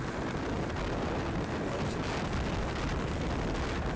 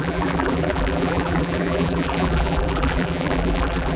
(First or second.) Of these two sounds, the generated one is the second